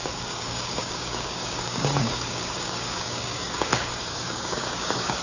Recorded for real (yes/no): no